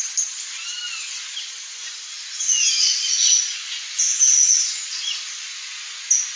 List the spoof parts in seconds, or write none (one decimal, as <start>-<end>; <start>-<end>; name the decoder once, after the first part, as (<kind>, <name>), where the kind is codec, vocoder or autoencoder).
none